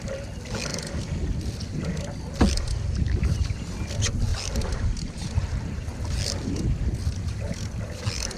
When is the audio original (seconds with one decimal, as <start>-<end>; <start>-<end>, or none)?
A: 0.0-4.3; 6.5-8.4